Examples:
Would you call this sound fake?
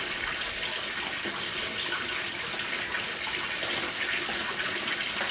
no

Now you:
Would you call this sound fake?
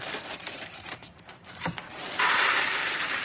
yes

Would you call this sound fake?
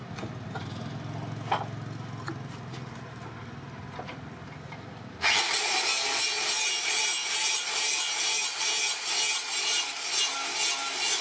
no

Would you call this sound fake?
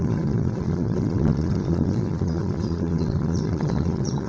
yes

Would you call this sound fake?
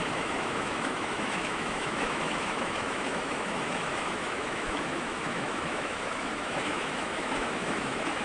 yes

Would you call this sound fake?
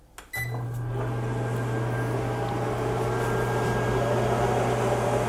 no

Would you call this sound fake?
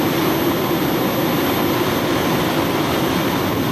no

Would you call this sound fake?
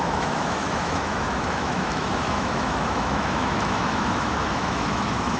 yes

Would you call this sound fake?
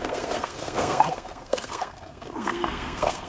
yes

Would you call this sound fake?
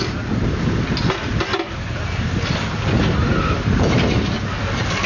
no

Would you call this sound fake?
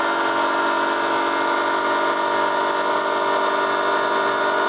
no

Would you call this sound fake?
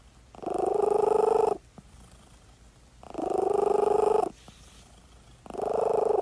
no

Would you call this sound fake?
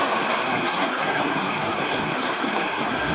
yes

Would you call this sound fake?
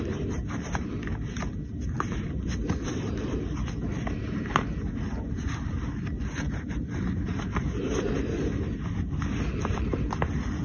yes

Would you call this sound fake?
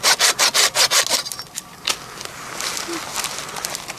no